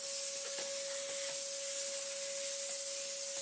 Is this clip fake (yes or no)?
no